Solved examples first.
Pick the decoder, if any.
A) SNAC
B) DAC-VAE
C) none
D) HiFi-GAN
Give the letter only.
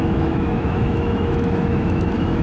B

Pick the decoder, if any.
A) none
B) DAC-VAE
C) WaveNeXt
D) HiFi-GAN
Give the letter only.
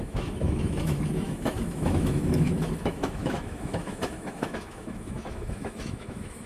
B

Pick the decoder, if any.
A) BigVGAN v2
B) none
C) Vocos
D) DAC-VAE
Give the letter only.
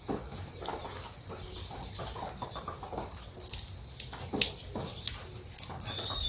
B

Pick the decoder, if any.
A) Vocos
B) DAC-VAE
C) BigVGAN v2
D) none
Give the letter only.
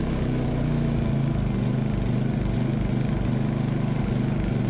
D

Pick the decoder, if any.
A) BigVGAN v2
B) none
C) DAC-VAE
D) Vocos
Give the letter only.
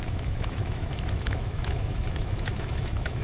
C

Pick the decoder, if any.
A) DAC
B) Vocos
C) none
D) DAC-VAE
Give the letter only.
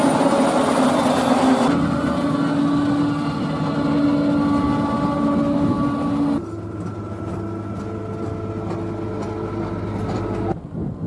C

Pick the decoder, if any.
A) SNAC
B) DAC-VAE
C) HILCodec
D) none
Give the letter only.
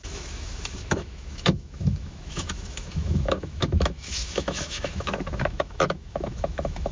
B